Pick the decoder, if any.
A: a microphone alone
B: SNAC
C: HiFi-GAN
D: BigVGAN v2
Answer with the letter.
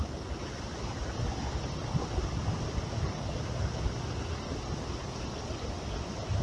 A